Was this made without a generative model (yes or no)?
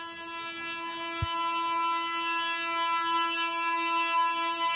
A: yes